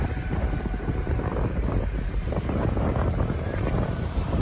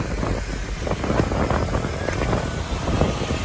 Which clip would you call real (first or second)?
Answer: second